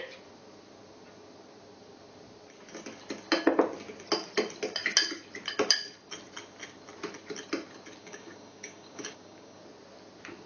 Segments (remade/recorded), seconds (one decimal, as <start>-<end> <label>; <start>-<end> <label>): 0.0-8.0 recorded; 8.0-9.6 remade; 9.6-10.5 recorded